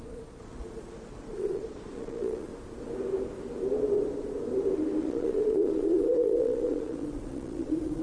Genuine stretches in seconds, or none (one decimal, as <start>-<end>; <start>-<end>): 2.5-5.0